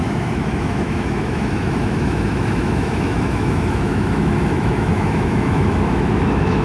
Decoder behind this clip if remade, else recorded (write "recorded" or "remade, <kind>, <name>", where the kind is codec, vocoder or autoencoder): remade, autoencoder, DAC-VAE